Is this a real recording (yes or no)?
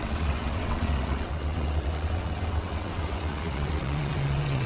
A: no